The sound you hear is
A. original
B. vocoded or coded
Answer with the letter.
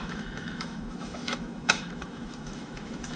B